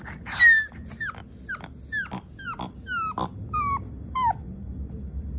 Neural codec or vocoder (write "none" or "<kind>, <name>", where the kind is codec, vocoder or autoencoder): none